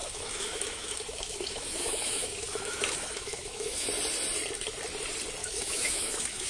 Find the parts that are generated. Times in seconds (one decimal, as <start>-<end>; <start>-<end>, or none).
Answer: 0.0-3.9; 5.4-6.5